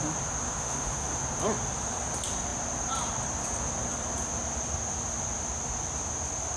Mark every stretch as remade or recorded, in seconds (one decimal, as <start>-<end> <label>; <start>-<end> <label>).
0.0-0.4 recorded; 0.4-1.2 remade; 1.2-6.6 recorded